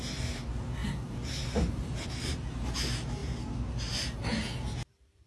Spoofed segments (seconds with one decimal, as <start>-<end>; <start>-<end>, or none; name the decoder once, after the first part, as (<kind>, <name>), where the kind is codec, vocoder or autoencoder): none

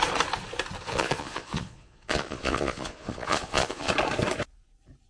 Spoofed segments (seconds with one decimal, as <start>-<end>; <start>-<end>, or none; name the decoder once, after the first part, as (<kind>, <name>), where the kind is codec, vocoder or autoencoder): 0.8-3.9 (vocoder, Vocos)

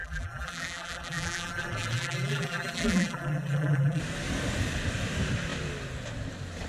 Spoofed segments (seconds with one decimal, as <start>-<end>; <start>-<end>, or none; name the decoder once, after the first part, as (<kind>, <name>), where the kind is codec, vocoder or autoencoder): 0.0-4.0 (vocoder, BigVGAN v2)

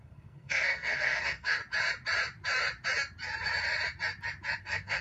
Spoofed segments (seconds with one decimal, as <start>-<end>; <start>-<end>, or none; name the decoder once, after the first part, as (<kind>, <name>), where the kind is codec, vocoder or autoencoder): 0.0-1.6 (codec, SNAC); 4.6-5.0

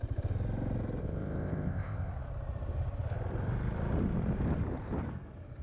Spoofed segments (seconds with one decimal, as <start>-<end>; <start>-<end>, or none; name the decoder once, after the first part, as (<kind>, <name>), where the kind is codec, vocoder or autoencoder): 1.0-2.1 (codec, ZipCodec)

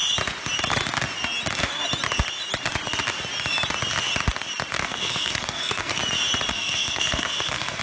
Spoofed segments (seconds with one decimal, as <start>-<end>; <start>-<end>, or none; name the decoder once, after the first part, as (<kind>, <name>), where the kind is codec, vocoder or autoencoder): 4.8-6.0 (codec, SNAC); 6.5-7.8

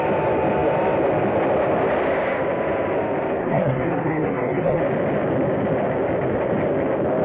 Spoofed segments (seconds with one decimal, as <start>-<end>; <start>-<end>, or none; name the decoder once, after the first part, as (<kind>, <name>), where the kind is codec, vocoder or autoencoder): 3.4-4.8 (codec, SNAC)